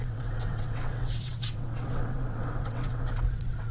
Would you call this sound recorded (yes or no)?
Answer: no